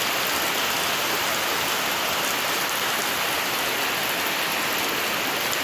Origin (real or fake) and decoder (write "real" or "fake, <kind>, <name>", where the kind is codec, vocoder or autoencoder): real